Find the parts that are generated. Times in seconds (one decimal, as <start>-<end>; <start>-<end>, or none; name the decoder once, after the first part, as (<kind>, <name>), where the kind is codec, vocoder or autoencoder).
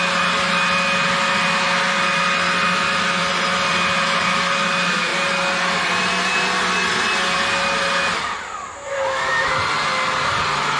8.9-9.5 (autoencoder, DAC-VAE)